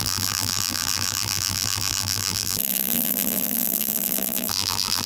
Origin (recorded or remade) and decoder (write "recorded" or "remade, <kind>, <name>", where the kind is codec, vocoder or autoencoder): remade, vocoder, BigVGAN v2